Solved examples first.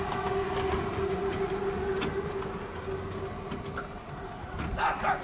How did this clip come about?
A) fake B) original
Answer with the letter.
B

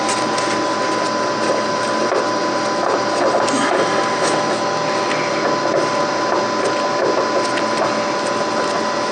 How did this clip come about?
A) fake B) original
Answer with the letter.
B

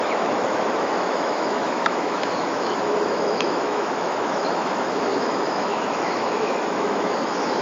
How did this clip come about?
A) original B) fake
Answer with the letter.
B